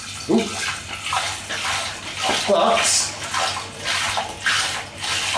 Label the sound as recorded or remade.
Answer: recorded